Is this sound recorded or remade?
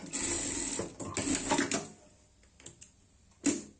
recorded